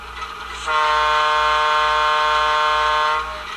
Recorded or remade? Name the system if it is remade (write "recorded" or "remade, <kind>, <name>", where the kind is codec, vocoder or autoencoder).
recorded